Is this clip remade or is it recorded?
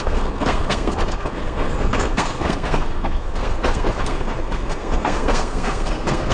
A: remade